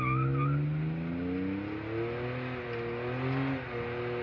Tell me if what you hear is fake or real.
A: real